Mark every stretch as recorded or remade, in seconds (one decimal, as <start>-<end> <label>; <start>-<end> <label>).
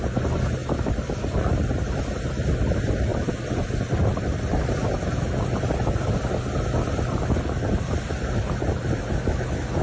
0.0-3.1 recorded; 3.1-3.8 remade; 3.8-9.8 recorded